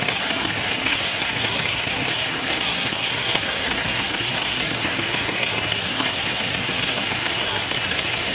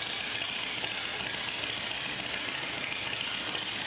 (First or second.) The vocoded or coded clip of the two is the first